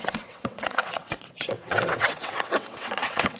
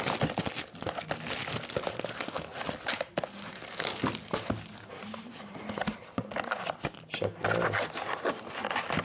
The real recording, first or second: second